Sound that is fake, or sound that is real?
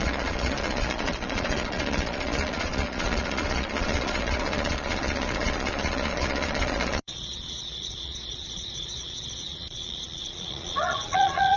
fake